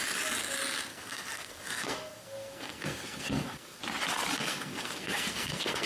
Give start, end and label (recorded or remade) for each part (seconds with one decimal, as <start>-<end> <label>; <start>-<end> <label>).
0.0-0.9 recorded; 0.9-3.8 remade; 3.8-4.4 recorded; 4.4-5.9 remade